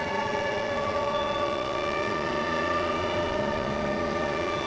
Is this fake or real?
fake